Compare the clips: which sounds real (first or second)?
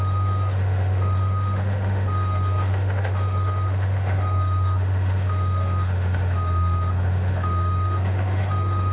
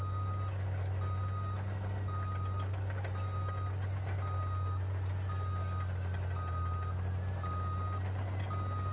second